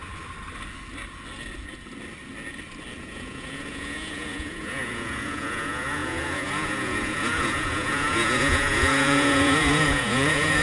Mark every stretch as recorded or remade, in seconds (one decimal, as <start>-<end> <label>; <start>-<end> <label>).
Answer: 0.0-3.0 recorded; 3.0-10.6 remade